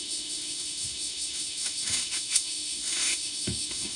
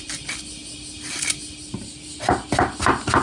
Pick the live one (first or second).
second